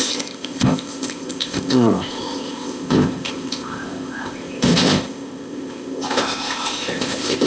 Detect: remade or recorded remade